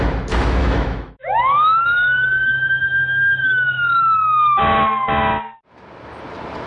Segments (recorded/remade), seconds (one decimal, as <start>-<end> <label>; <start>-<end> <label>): 0.0-0.6 recorded; 0.6-4.6 remade; 4.6-6.7 recorded